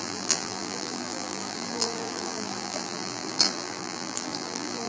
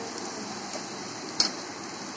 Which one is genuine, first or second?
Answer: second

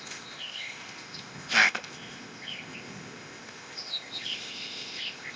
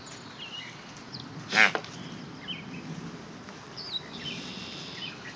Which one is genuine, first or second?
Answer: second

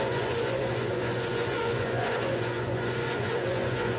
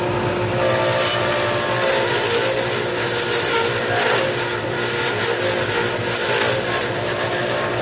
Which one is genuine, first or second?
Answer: second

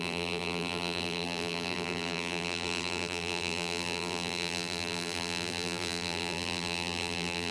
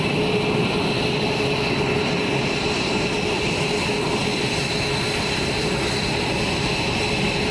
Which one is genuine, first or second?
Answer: second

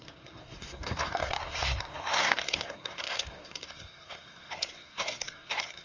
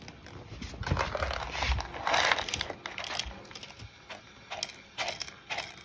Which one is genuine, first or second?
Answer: second